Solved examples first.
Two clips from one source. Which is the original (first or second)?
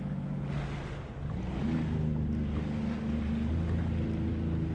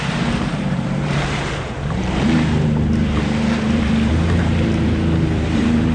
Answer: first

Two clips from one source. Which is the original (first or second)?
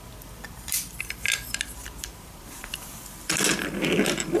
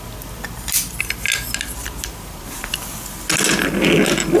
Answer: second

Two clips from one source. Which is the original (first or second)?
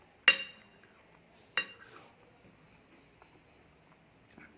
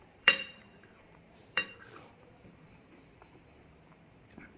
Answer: first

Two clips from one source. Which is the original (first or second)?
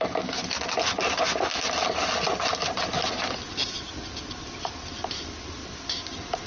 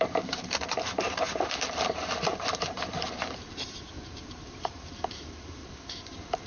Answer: first